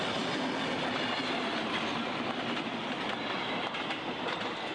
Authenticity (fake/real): real